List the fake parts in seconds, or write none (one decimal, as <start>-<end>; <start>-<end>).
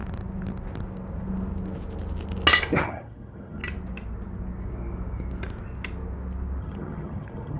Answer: 2.8-3.6; 6.6-7.6